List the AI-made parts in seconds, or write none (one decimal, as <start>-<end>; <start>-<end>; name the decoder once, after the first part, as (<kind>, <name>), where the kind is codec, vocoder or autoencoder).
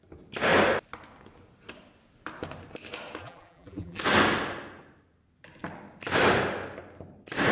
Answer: 3.2-4.0 (vocoder, BigVGAN v2)